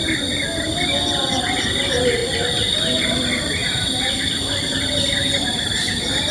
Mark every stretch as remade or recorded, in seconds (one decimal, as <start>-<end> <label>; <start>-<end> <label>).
0.0-1.3 recorded; 1.3-2.2 remade; 2.2-3.0 recorded; 3.0-6.3 remade